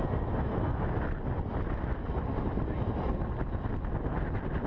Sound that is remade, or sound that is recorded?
recorded